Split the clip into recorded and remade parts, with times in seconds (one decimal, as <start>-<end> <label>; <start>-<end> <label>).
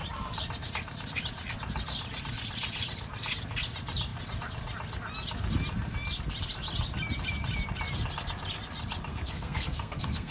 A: 0.0-9.1 recorded; 9.1-10.3 remade